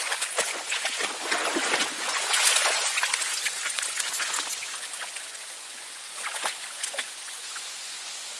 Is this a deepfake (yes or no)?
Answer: yes